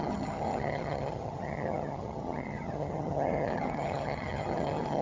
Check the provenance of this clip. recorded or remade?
remade